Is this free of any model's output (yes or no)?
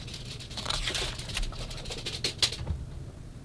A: yes